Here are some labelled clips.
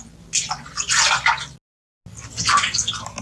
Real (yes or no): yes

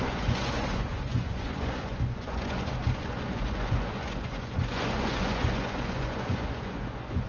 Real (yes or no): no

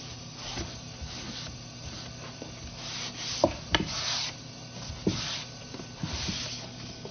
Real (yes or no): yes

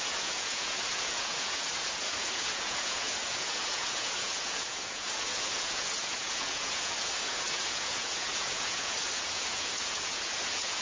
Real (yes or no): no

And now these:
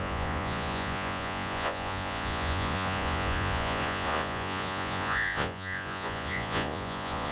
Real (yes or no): no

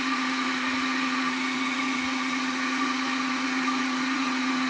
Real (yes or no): no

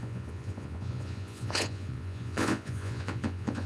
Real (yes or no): no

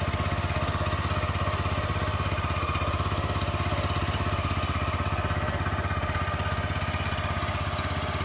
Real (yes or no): yes